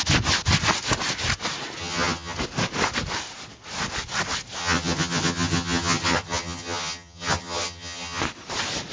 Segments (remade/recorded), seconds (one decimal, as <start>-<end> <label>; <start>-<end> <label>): 0.0-1.8 recorded; 1.8-2.4 remade; 2.4-4.6 recorded; 4.6-8.2 remade; 8.2-8.9 recorded